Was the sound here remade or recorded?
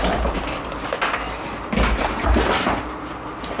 recorded